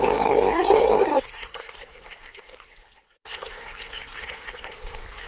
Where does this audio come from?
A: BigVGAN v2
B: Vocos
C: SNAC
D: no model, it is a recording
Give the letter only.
C